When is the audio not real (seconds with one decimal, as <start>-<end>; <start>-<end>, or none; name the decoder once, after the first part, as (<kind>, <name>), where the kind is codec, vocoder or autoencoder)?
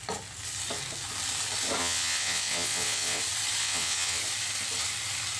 1.8-3.2 (vocoder, WaveNeXt); 3.6-4.2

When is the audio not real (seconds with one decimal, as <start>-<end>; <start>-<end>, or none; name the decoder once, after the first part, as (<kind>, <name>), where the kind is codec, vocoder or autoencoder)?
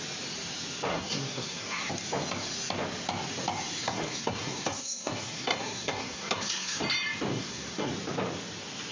0.9-1.9 (codec, SNAC); 3.8-6.8; 7.3-7.9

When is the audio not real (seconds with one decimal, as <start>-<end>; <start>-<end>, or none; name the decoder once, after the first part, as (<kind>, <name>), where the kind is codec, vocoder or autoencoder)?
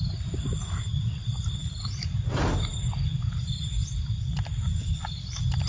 none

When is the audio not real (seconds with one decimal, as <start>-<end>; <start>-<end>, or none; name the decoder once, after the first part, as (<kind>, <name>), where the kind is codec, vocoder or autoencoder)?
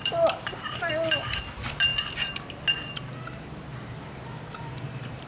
0.0-0.9 (vocoder, BigVGAN v2); 3.7-5.3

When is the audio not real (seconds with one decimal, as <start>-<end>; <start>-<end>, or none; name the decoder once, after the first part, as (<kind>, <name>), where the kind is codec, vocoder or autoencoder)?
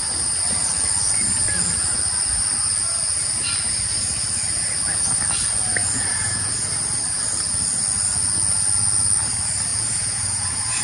5.8-6.7 (vocoder, Vocos); 9.7-10.8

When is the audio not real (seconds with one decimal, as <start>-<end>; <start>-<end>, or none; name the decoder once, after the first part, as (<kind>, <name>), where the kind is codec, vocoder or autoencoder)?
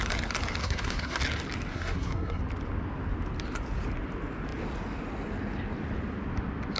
0.6-1.2 (codec, SNAC); 1.7-2.4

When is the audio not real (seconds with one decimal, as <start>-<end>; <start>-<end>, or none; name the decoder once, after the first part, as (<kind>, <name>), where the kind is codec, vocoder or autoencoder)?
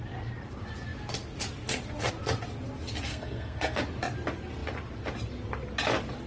3.1-3.8 (codec, SNAC)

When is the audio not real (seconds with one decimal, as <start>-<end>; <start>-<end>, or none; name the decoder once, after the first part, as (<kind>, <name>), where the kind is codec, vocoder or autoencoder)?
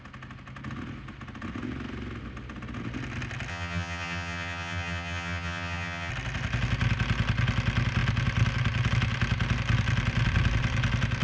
3.5-6.1 (vocoder, HiFi-GAN)